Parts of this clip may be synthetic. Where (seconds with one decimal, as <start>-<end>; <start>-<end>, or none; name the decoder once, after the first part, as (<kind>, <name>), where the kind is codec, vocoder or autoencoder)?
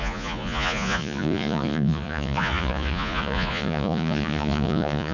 0.0-5.1 (vocoder, Vocos)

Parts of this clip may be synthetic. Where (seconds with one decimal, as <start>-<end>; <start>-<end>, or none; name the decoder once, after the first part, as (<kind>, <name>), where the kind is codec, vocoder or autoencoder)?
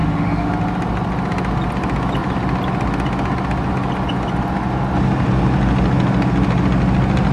0.0-0.5 (autoencoder, DAC-VAE)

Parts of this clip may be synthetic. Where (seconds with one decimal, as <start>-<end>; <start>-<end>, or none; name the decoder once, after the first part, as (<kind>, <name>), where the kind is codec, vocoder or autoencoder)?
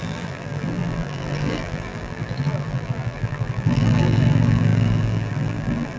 0.0-6.0 (vocoder, BigVGAN v2)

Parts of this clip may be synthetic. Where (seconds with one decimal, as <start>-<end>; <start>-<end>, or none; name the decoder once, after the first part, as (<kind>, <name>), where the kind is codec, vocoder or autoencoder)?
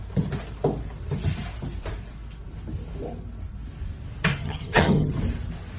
4.4-5.2 (vocoder, HiFi-GAN)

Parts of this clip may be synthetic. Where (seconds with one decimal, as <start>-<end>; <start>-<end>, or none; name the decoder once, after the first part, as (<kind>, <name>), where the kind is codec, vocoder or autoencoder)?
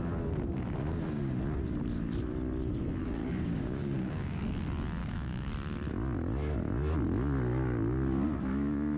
3.2-4.4 (codec, DAC); 5.0-5.5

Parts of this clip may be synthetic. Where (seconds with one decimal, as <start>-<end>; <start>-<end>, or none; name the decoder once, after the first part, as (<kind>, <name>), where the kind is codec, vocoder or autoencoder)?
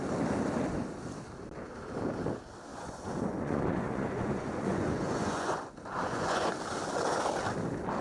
2.7-6.5 (vocoder, Vocos)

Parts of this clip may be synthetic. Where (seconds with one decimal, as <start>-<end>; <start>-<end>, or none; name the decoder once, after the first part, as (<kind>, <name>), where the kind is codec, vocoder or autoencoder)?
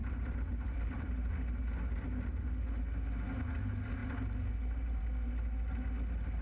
0.0-1.3 (vocoder, BigVGAN v2)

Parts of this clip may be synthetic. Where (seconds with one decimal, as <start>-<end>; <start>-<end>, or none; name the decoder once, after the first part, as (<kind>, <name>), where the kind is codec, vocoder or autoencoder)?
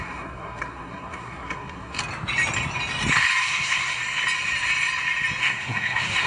0.0-2.0 (codec, SNAC); 3.4-4.0; 5.4-6.3